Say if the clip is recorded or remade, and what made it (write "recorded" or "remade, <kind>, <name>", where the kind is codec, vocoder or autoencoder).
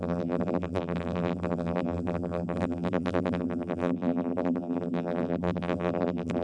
remade, vocoder, BigVGAN v2